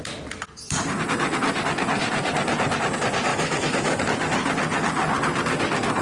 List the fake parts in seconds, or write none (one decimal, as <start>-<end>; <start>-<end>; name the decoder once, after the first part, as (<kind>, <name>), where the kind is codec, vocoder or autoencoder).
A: 3.3-4.0 (autoencoder, DAC-VAE)